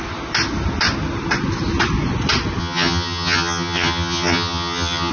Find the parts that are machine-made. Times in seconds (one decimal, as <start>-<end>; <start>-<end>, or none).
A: 2.6-5.1